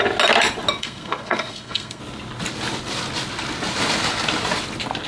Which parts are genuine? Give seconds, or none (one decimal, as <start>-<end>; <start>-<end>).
0.0-0.8; 2.0-5.1

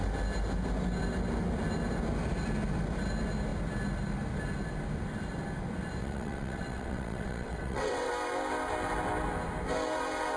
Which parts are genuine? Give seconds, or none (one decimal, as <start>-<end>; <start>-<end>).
0.0-6.0; 8.1-10.4

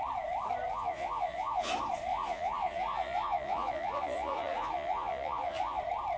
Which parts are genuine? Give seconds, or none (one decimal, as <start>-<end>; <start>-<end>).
0.0-0.7; 1.7-2.1; 5.8-6.2

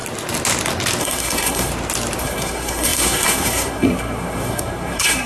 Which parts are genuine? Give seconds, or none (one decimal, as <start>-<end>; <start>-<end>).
0.0-1.0; 1.7-2.2